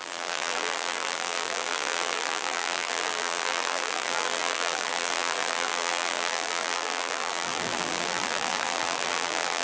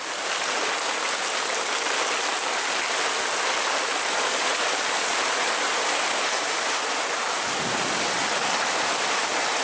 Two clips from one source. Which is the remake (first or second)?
first